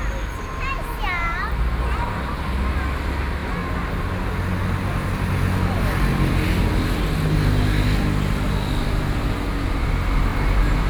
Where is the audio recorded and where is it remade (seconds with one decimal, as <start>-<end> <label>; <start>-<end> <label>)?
0.0-10.9 recorded